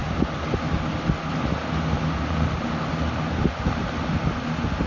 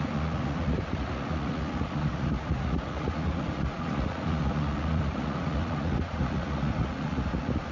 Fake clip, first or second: second